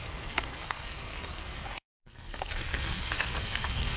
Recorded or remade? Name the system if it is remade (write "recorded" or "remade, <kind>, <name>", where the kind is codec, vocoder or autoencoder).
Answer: remade, codec, SNAC